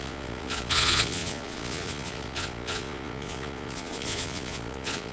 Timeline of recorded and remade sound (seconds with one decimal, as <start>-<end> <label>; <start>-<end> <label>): 0.0-5.1 remade